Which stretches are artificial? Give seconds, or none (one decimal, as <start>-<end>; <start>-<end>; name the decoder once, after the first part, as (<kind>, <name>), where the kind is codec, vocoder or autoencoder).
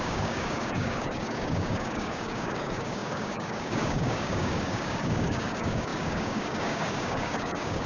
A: 0.0-7.9 (codec, DAC)